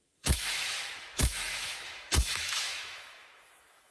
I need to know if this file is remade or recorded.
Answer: remade